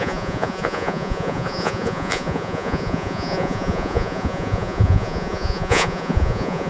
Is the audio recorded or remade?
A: remade